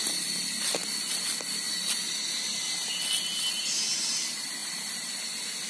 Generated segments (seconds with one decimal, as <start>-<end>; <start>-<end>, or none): 4.6-5.2